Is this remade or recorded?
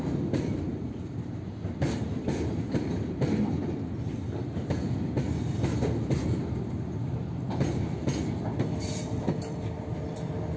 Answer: recorded